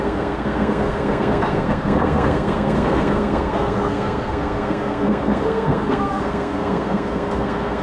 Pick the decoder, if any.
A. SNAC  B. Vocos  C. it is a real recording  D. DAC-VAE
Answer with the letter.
A